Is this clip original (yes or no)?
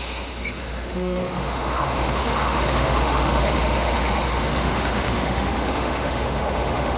no